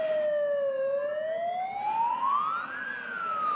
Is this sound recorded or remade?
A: recorded